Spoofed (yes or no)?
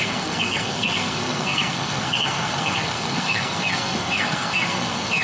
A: yes